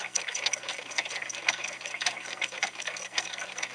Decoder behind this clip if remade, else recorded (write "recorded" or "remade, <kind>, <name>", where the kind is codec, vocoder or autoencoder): remade, codec, SNAC